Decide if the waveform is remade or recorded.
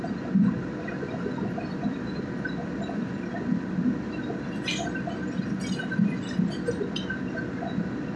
recorded